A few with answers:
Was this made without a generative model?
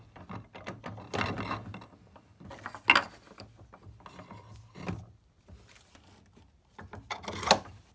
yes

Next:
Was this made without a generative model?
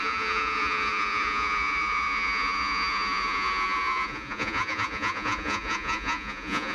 no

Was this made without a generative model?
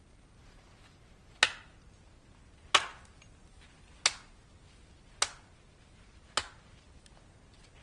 yes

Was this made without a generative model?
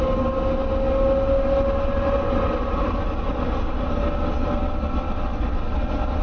yes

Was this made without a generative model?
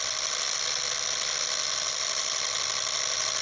yes